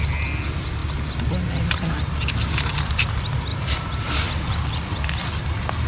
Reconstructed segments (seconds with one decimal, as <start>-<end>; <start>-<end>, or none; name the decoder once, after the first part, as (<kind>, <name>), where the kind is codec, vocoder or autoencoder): 3.5-4.3 (vocoder, BigVGAN v2)